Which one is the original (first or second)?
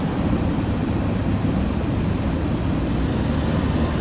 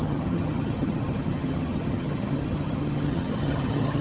first